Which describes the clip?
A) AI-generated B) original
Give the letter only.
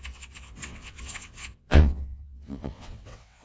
A